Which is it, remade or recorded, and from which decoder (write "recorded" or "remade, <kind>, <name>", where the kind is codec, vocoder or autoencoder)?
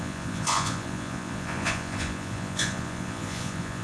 remade, vocoder, Vocos